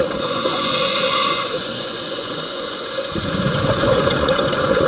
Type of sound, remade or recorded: remade